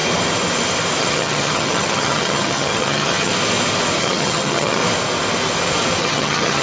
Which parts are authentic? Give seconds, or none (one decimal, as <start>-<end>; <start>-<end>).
0.0-1.0; 3.3-4.0; 4.8-6.0